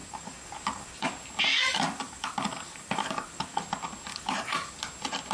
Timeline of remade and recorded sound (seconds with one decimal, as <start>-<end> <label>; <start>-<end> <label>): 0.0-1.1 remade; 1.1-1.5 recorded; 1.5-3.6 remade; 3.6-4.1 recorded; 4.1-4.8 remade; 4.8-5.3 recorded